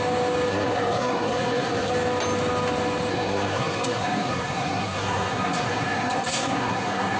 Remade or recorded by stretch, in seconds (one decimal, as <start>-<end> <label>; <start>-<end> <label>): 0.0-0.5 recorded; 0.5-1.9 remade; 1.9-3.1 recorded; 3.1-7.2 remade